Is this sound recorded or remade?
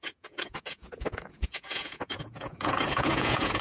remade